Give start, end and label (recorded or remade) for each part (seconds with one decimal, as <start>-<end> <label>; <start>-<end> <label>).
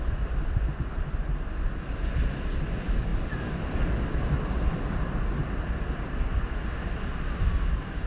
0.0-8.1 recorded